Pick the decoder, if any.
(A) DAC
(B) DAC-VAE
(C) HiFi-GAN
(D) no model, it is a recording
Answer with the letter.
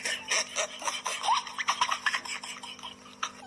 D